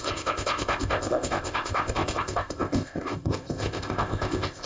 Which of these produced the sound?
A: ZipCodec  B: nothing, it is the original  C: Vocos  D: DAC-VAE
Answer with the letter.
A